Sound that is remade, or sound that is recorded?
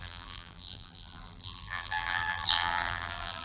remade